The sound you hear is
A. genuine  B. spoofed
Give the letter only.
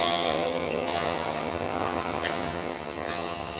B